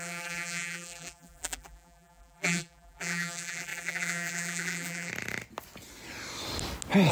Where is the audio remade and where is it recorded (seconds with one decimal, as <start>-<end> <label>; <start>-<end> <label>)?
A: 0.0-5.1 remade; 5.1-7.1 recorded